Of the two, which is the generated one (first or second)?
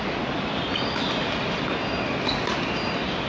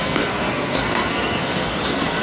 second